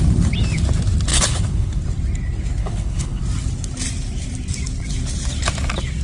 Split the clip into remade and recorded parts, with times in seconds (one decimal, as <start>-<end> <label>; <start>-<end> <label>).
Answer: 0.0-1.1 recorded; 1.1-1.8 remade; 1.8-2.6 recorded; 2.6-3.2 remade; 3.2-6.0 recorded